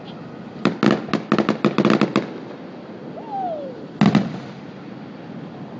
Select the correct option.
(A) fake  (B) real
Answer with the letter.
B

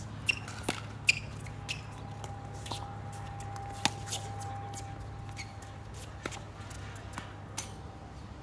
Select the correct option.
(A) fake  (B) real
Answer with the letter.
B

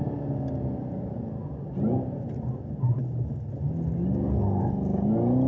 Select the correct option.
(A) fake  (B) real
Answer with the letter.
B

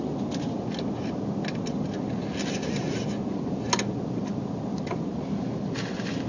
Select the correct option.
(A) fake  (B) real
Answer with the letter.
B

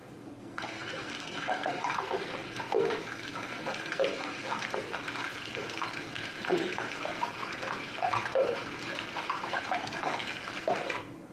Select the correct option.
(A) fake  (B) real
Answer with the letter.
A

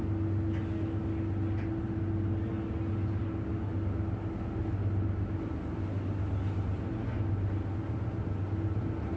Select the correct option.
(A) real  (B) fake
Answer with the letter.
A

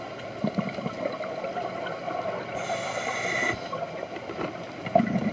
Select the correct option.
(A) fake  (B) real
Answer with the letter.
B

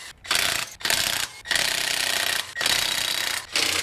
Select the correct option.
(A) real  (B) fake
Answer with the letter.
A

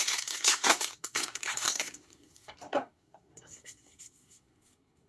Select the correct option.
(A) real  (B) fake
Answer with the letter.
B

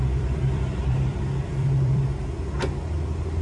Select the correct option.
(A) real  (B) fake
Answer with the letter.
B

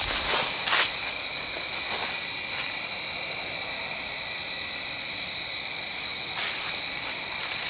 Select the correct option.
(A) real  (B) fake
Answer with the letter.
A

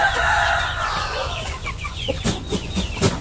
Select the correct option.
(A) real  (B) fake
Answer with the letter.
B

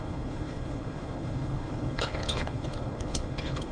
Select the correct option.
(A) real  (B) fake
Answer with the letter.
B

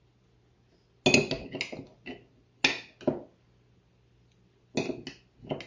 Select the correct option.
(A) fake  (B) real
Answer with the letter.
B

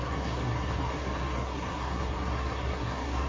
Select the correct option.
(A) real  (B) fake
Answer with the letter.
B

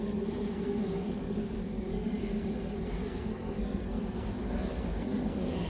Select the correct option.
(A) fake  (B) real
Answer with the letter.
A